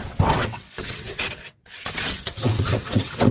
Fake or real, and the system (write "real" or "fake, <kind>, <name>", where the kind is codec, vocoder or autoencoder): fake, vocoder, WaveNeXt